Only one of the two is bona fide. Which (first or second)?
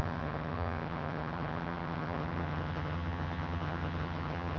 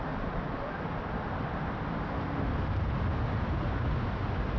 second